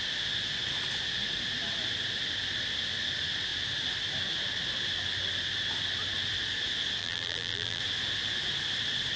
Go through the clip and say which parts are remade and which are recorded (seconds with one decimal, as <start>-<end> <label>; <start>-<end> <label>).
0.0-7.0 recorded; 7.0-7.8 remade; 7.8-9.2 recorded